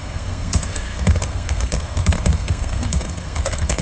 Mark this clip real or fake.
fake